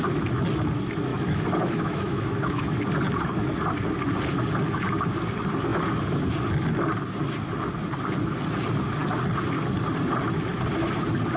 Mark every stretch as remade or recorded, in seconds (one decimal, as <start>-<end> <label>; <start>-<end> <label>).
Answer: 0.0-1.1 recorded; 1.1-2.8 remade; 2.8-11.4 recorded